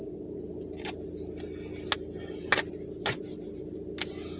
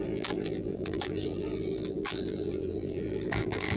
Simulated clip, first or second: second